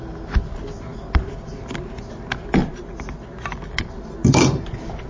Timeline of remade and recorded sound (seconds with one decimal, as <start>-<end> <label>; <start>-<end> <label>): 0.0-5.1 recorded